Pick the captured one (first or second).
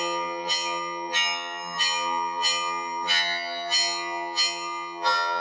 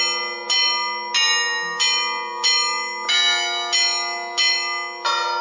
second